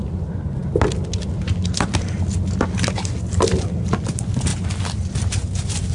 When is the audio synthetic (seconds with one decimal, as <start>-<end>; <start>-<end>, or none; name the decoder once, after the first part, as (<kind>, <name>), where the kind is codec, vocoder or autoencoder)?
none